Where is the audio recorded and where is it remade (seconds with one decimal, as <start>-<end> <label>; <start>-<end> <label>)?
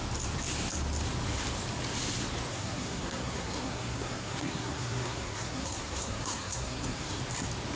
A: 0.0-2.5 recorded; 2.5-7.2 remade; 7.2-7.8 recorded